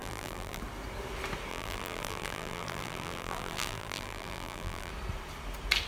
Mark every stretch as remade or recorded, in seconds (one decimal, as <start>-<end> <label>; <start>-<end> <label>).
0.0-0.6 remade; 0.6-1.5 recorded; 1.5-4.9 remade; 4.9-5.9 recorded